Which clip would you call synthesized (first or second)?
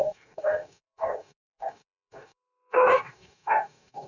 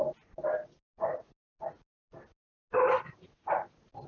first